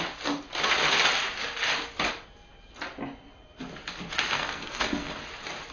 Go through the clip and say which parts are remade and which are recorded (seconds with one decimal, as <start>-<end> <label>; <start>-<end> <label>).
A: 0.0-4.3 recorded; 4.3-5.1 remade; 5.1-5.7 recorded